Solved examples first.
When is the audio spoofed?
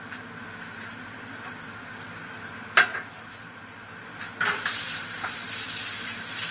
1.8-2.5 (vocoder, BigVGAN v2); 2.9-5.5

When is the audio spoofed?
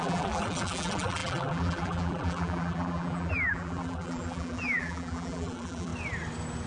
0.0-5.9 (vocoder, BigVGAN v2)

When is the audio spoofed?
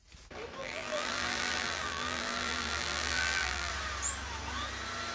0.6-3.7 (vocoder, BigVGAN v2)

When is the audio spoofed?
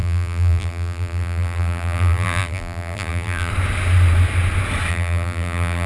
0.0-3.5 (vocoder, BigVGAN v2); 4.9-5.9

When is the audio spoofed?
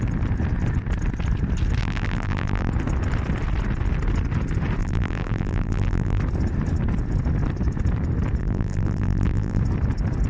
1.8-2.7 (vocoder, BigVGAN v2); 4.8-6.2; 8.4-9.6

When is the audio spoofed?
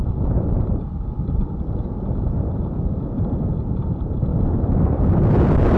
3.2-4.3 (vocoder, BigVGAN v2); 5.3-5.8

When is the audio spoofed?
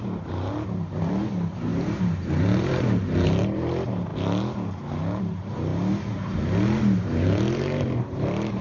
0.0-4.1 (vocoder, BigVGAN v2); 5.2-5.7; 7.0-8.6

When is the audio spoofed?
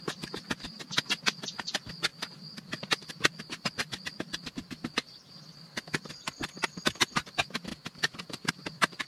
0.0-2.1 (vocoder, BigVGAN v2); 2.6-7.7; 8.5-9.1